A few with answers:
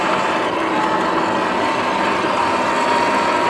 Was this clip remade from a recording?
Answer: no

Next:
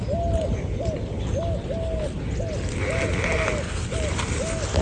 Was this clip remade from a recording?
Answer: no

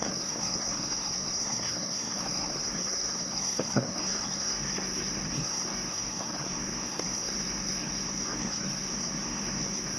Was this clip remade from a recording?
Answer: yes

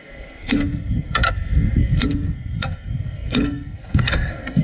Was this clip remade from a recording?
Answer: yes